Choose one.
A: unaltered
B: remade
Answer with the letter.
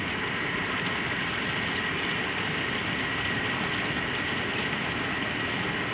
A